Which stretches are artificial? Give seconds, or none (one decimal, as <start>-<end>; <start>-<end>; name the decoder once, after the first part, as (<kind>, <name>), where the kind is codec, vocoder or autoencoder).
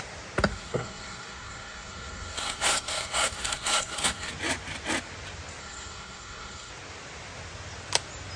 0.5-4.3 (codec, SNAC); 5.6-6.7